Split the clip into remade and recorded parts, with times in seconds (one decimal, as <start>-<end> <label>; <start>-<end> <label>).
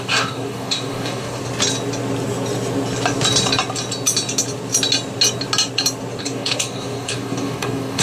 0.0-1.4 remade; 1.4-6.2 recorded; 6.2-8.0 remade